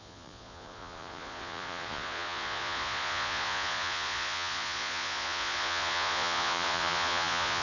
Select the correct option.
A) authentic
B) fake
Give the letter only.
B